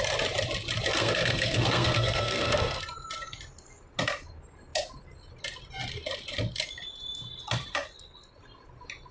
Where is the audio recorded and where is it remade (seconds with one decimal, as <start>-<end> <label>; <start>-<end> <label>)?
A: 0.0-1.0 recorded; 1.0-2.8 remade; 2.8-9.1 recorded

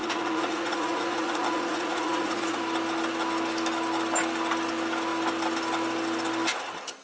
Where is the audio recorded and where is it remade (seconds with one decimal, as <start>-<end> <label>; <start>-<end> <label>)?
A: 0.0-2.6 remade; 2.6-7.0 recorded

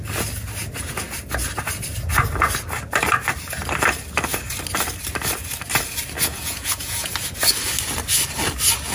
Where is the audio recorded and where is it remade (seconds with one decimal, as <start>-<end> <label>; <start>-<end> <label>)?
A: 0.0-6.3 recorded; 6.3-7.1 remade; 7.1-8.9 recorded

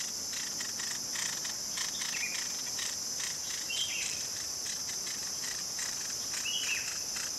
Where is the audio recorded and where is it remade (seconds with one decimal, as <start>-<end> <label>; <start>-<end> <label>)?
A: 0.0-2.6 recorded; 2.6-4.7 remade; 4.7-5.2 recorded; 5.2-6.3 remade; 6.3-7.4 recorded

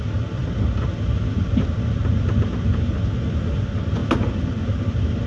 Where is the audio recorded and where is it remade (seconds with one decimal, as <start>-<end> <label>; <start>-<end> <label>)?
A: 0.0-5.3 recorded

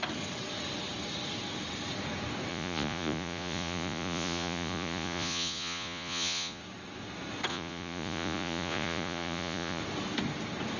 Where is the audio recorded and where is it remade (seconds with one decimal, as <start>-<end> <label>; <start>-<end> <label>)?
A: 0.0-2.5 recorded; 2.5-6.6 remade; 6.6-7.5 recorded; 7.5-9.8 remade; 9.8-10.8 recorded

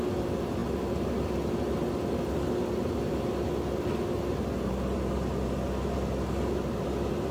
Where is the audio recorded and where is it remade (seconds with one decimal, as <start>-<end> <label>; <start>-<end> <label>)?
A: 0.0-0.6 recorded; 0.6-1.1 remade; 1.1-7.3 recorded